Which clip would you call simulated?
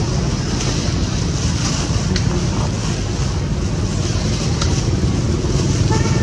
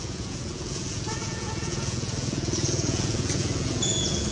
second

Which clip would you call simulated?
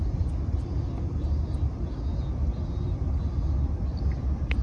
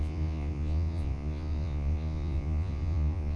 second